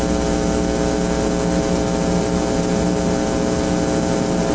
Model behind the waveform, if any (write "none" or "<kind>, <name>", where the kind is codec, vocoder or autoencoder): none